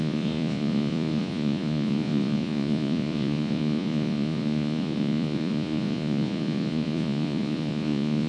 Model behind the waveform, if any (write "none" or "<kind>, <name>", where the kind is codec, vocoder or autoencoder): vocoder, Vocos